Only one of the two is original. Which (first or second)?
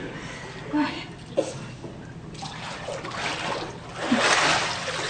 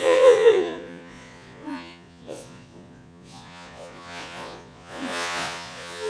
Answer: first